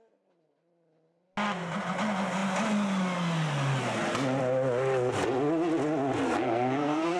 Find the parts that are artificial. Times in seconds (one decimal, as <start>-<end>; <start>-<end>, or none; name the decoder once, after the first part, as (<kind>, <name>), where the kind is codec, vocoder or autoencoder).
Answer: 6.4-7.2 (codec, SNAC)